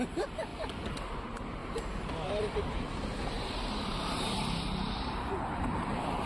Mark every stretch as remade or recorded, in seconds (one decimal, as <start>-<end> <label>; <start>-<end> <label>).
0.0-0.5 remade; 0.5-1.2 recorded; 1.2-1.6 remade; 1.6-2.6 recorded; 2.6-6.3 remade